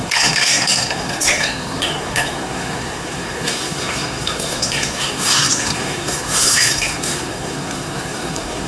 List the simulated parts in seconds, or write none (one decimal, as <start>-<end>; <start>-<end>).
0.0-8.7